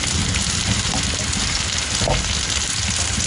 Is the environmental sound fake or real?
real